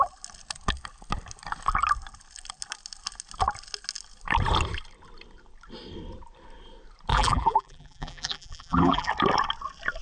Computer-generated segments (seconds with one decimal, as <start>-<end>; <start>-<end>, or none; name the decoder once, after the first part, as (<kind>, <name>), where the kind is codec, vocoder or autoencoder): 7.1-9.1 (vocoder, BigVGAN v2)